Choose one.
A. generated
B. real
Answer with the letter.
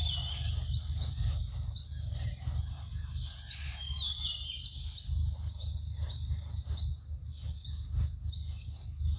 B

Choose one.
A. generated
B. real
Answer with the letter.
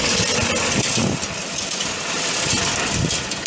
B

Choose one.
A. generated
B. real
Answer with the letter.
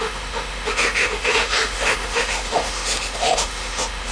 A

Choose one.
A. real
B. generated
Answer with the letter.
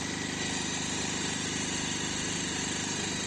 A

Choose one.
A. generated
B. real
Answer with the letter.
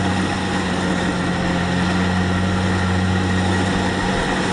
B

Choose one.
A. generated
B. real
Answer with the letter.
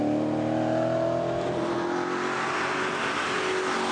B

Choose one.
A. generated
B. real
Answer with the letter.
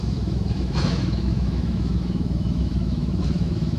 A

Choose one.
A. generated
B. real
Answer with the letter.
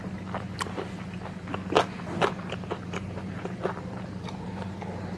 B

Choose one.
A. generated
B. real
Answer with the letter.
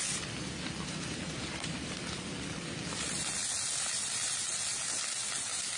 B